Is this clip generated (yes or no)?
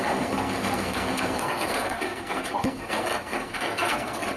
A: yes